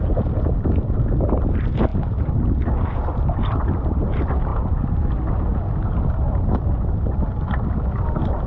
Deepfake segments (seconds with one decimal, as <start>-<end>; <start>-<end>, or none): none